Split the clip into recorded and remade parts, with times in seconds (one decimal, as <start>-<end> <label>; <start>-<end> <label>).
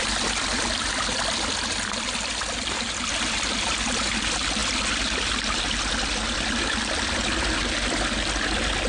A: 0.0-8.9 recorded